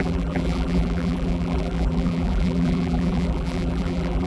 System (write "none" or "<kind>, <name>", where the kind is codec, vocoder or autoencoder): vocoder, BigVGAN v2